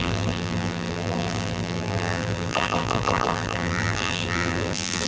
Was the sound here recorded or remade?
remade